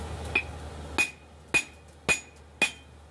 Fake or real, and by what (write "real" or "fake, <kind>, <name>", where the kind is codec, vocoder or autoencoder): real